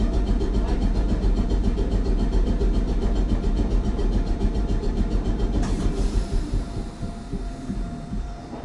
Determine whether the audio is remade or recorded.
remade